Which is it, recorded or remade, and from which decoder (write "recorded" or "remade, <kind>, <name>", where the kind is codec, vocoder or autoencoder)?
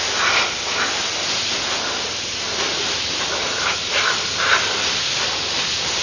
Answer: recorded